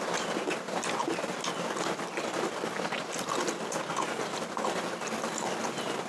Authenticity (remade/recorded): recorded